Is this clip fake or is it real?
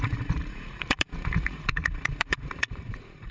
fake